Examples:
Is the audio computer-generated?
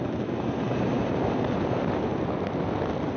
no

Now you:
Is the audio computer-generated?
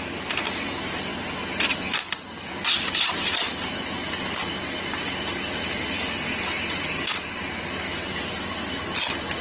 no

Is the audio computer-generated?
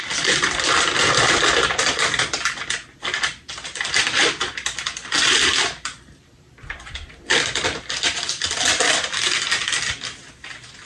no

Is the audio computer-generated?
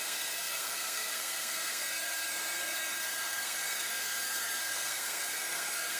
yes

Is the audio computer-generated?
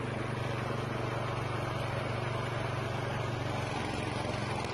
no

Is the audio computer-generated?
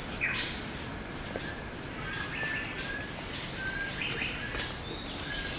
no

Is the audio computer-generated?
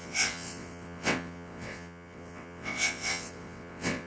yes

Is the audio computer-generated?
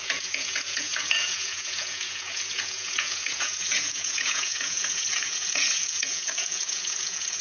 yes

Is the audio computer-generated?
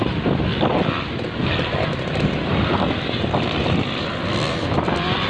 no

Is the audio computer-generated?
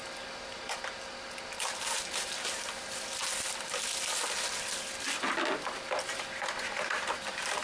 no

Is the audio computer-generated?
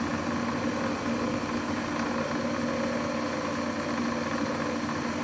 no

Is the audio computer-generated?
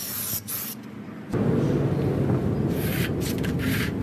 no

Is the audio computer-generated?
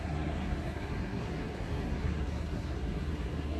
yes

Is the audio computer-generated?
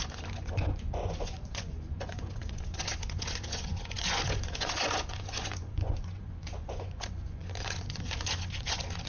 yes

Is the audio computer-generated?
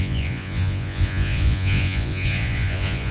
yes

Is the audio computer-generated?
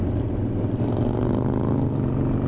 no